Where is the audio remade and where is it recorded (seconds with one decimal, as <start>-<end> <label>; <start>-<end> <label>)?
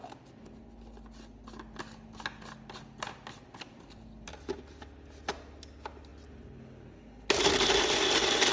0.0-8.5 recorded